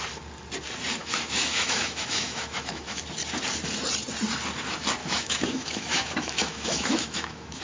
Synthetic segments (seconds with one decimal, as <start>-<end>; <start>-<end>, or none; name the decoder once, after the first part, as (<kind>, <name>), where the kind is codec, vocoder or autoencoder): 1.0-3.0 (autoencoder, DAC-VAE); 5.0-7.6